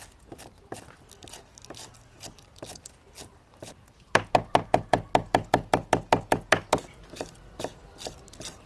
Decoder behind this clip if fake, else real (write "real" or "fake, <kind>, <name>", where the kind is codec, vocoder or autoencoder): real